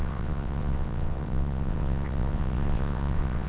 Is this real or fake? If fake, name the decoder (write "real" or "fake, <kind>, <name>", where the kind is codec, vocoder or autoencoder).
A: fake, vocoder, WaveNeXt